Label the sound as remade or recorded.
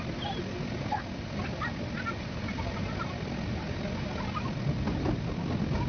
recorded